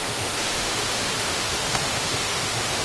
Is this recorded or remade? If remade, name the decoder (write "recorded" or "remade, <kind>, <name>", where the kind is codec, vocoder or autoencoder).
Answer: remade, autoencoder, DAC-VAE